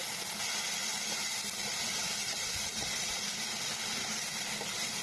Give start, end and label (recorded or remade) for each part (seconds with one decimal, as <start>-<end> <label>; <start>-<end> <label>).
0.0-5.0 recorded